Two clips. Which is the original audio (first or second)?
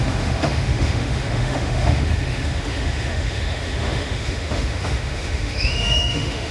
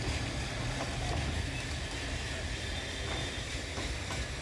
second